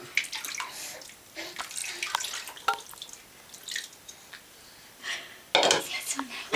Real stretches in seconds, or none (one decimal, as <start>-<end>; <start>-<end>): 0.0-6.6